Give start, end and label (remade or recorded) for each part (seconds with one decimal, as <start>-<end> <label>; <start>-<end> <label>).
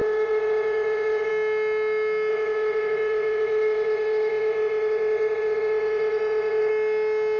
0.0-1.3 remade; 1.3-2.3 recorded; 2.3-6.7 remade; 6.7-7.4 recorded